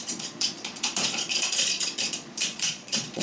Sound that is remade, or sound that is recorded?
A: remade